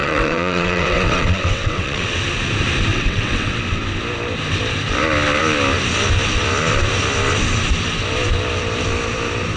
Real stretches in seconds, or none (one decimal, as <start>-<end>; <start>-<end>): 2.2-2.9; 3.6-9.6